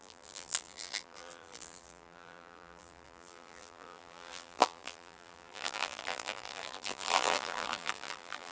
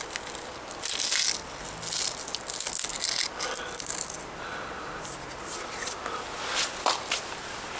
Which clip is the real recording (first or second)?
second